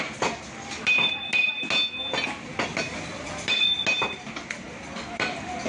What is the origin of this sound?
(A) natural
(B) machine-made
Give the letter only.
A